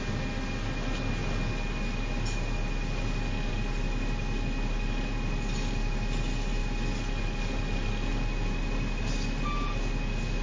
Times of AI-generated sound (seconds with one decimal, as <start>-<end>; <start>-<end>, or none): none